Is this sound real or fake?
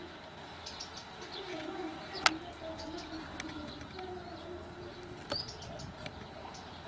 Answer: real